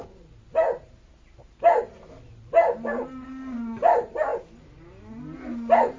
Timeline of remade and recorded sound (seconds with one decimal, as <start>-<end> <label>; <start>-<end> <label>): 0.0-6.0 recorded